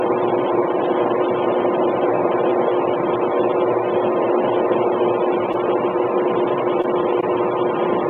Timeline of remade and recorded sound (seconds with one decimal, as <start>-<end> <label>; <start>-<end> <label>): 0.0-8.1 recorded